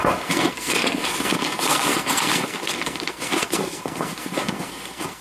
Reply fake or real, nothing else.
fake